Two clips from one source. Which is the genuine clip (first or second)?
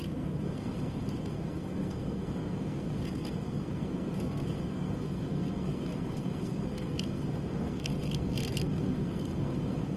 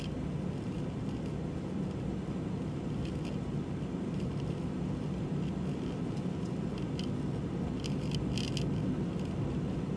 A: second